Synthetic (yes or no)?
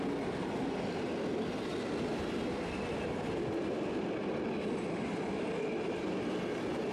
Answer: no